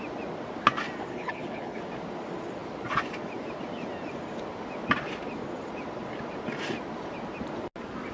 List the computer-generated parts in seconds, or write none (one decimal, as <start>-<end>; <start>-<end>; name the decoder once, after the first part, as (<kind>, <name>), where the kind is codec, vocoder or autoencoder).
1.1-1.8 (codec, HILCodec)